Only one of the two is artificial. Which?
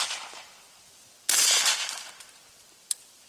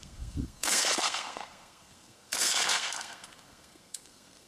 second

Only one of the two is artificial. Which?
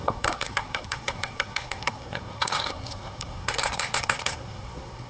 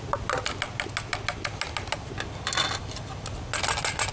first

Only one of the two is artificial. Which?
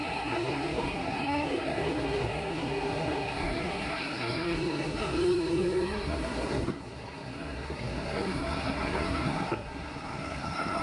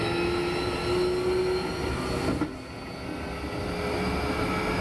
first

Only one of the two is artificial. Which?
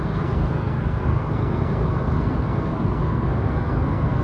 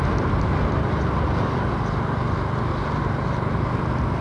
first